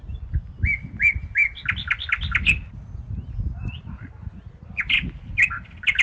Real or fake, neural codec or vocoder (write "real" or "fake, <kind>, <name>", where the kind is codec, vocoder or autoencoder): real